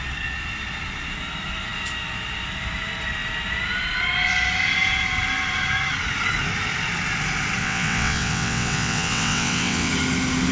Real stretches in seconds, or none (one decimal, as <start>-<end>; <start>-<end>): 0.0-7.6; 9.9-10.5